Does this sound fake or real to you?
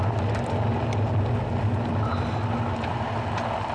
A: real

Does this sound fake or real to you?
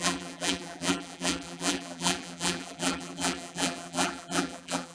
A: fake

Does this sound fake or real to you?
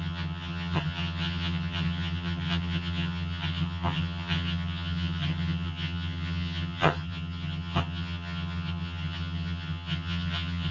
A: fake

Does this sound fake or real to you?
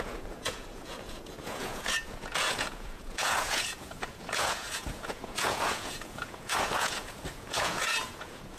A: fake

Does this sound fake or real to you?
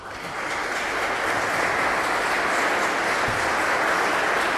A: real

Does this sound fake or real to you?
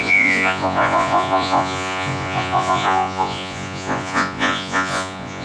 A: fake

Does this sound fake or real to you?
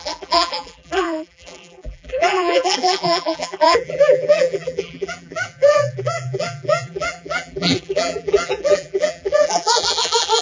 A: fake